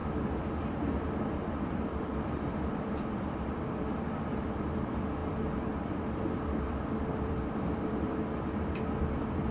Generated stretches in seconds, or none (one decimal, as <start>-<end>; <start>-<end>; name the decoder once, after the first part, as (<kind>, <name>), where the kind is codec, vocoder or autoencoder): 0.0-4.5 (vocoder, BigVGAN v2); 5.2-9.0